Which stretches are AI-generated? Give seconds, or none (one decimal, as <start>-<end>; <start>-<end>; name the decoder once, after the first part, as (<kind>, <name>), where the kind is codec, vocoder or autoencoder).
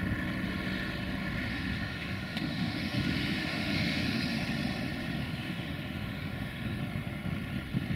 1.5-4.2 (autoencoder, DAC-VAE); 5.2-6.8